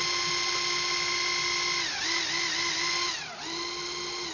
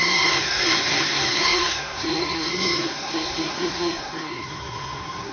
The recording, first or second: first